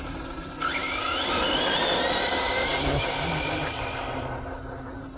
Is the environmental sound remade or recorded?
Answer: recorded